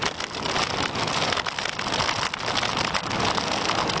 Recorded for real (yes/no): yes